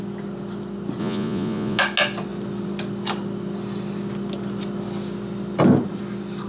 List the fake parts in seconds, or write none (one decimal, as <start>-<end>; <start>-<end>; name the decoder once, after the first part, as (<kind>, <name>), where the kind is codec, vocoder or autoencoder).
1.0-1.8 (vocoder, Vocos)